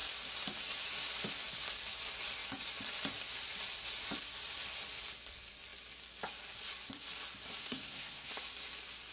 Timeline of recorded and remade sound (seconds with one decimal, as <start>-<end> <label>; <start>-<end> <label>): 0.0-7.6 recorded; 7.6-8.3 remade; 8.3-9.1 recorded